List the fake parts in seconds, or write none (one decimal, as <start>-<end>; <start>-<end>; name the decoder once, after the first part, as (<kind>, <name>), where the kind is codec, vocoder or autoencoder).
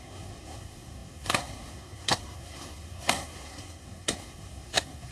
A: 0.0-5.1 (codec, SNAC)